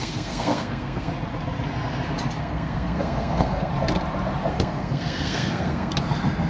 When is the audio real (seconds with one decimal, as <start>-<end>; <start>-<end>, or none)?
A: 1.1-2.4; 3.7-4.5; 5.9-6.5